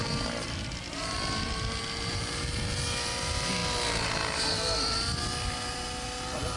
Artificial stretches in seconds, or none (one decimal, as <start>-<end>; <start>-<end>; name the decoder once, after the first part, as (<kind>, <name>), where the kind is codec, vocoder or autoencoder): none